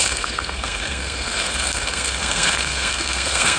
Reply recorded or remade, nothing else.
remade